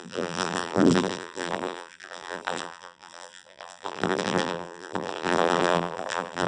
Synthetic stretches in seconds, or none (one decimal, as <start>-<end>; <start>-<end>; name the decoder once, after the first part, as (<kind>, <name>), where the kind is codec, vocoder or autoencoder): 0.0-6.5 (vocoder, BigVGAN v2)